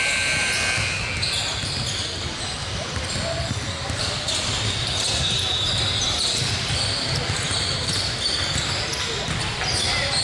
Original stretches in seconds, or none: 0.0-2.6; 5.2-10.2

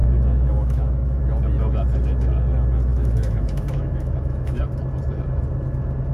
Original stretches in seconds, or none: 1.2-2.9; 4.6-6.1

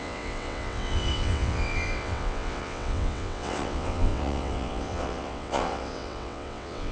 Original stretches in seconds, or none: none

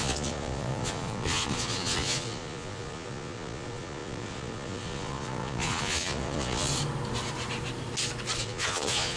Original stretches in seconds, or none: 6.7-8.4